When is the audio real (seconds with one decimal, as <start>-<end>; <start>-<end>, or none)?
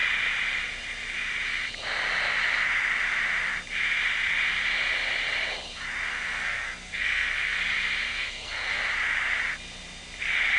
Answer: 0.0-6.1; 7.6-8.1; 8.8-10.6